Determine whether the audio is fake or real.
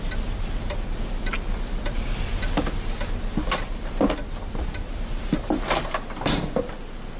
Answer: real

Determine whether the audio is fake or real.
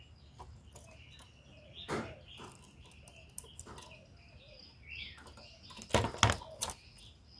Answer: real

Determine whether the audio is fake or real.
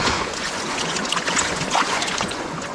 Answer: fake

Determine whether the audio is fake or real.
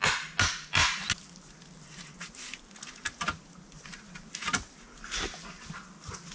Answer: real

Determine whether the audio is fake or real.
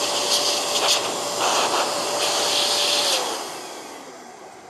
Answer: real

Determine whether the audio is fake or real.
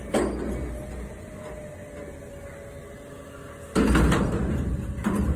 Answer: real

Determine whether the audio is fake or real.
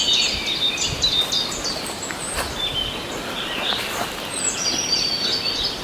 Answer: real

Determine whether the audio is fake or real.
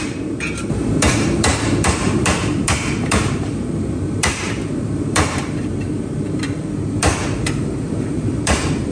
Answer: fake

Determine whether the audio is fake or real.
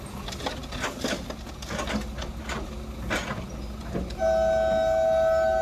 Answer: real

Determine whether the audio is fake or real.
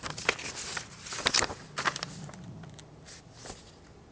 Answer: real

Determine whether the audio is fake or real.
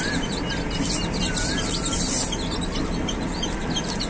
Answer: real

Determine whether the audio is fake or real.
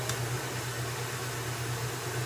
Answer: real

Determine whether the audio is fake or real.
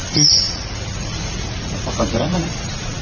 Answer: fake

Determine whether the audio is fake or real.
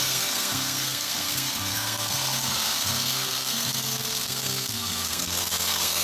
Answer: fake